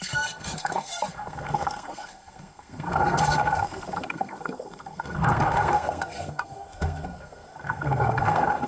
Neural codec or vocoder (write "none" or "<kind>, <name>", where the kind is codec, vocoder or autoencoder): codec, SNAC